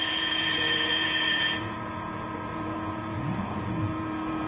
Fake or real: fake